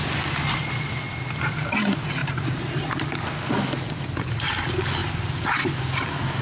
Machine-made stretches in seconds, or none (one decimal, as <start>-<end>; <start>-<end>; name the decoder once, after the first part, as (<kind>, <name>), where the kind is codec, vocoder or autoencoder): 2.2-2.8 (vocoder, BigVGAN v2); 5.0-5.7